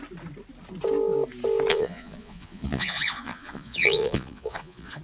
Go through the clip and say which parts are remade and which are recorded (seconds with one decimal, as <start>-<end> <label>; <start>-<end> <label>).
0.0-1.7 recorded; 1.7-5.0 remade

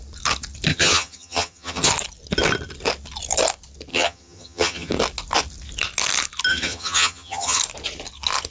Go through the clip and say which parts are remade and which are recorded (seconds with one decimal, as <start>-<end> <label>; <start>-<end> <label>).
0.0-0.7 recorded; 0.7-1.9 remade; 1.9-3.9 recorded; 3.9-4.9 remade; 4.9-6.5 recorded; 6.5-7.6 remade; 7.6-8.5 recorded

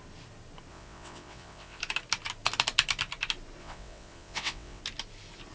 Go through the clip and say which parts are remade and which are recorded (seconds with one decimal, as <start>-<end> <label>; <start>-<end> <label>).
0.0-0.7 recorded; 0.7-1.8 remade; 1.8-3.6 recorded; 3.6-4.8 remade; 4.8-5.5 recorded

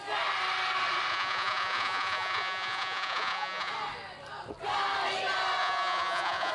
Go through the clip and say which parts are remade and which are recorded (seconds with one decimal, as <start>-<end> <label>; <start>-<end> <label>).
0.0-1.1 recorded; 1.1-3.7 remade; 3.7-5.6 recorded; 5.6-6.5 remade

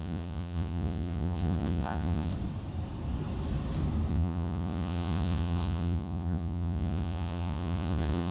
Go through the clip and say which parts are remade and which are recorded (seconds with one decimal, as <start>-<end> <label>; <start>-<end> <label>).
0.0-2.3 remade; 2.3-4.1 recorded; 4.1-8.3 remade

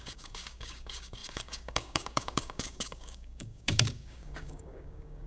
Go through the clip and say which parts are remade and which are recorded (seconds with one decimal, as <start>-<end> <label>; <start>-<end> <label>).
0.0-5.3 remade

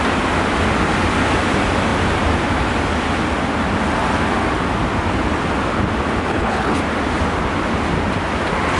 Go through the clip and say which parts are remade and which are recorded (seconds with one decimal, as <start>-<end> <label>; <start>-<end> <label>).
0.0-6.3 recorded; 6.3-6.8 remade; 6.8-8.8 recorded